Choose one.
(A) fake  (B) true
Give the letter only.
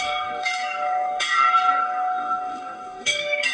A